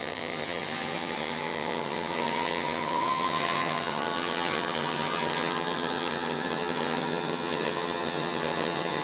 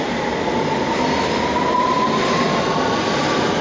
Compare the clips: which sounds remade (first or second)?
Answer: first